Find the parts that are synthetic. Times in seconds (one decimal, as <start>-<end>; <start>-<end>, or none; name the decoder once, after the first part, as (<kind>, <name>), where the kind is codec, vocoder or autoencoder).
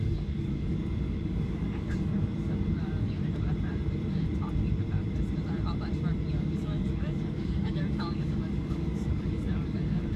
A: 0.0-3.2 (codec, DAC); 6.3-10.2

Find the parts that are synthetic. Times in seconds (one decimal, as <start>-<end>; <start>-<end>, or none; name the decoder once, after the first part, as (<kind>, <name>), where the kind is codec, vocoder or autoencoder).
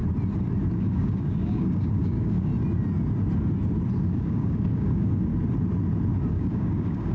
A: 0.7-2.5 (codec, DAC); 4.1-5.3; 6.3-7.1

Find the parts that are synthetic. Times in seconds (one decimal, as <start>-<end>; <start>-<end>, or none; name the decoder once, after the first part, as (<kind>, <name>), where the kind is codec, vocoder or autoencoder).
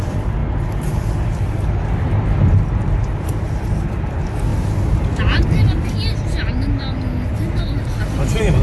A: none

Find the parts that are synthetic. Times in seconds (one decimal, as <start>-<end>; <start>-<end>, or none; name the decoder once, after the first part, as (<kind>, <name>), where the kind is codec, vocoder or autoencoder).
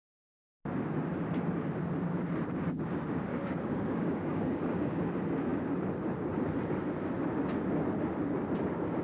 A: 3.3-5.1 (codec, DAC)